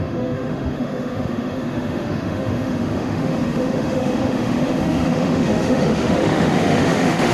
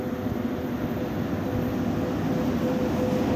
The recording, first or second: second